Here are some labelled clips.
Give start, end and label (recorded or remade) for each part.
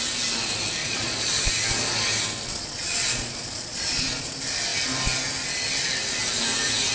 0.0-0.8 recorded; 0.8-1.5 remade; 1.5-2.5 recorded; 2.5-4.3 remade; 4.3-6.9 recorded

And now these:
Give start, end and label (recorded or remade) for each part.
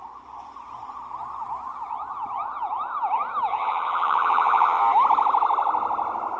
0.0-3.5 recorded; 3.5-4.8 remade; 4.8-6.4 recorded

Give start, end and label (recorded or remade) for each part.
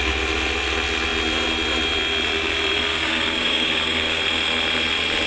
0.0-2.9 recorded; 2.9-4.2 remade; 4.2-5.3 recorded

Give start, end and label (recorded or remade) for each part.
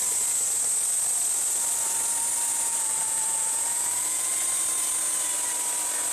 0.0-2.5 recorded; 2.5-4.3 remade; 4.3-6.1 recorded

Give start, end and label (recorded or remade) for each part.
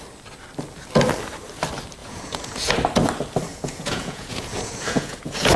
0.0-2.0 recorded; 2.0-2.7 remade; 2.7-3.5 recorded; 3.5-5.6 remade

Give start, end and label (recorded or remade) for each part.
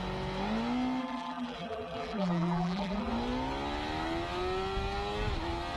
0.0-1.0 recorded; 1.0-3.1 remade; 3.1-5.8 recorded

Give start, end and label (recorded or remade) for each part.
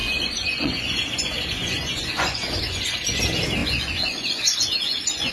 0.0-3.2 remade; 3.2-3.6 recorded; 3.6-5.3 remade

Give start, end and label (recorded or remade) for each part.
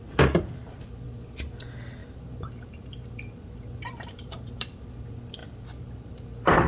0.0-2.0 recorded; 2.0-4.8 remade; 4.8-5.4 recorded; 5.4-6.7 remade